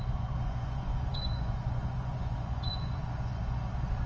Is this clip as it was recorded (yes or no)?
no